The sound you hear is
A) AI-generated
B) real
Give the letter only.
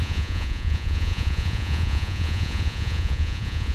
A